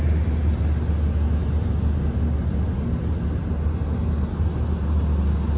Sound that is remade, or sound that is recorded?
recorded